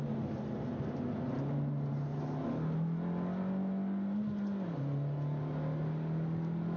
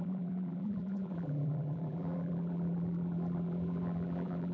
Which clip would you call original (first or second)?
first